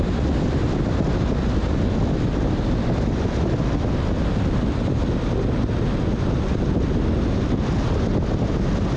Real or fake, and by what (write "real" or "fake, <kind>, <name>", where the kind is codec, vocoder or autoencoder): real